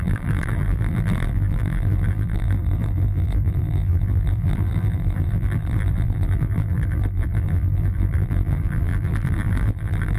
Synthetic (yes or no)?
yes